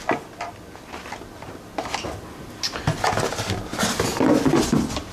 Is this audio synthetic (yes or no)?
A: no